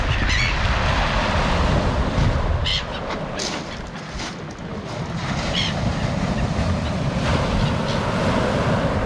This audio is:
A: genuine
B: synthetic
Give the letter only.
A